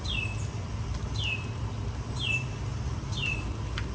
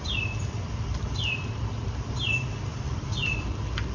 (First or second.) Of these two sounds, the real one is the first